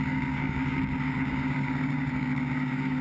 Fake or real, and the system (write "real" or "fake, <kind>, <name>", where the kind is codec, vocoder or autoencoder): fake, codec, DAC